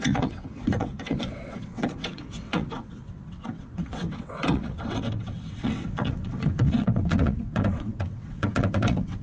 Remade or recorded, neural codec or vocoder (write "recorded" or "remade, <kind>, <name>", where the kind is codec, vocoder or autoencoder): remade, vocoder, WaveNeXt